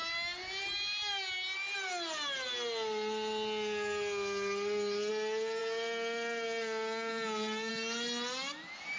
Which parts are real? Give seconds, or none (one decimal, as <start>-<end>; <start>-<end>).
0.0-9.0